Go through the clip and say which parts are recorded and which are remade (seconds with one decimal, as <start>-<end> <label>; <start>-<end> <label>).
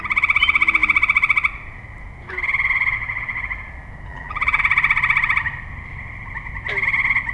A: 0.0-4.1 recorded; 4.1-4.6 remade; 4.6-7.3 recorded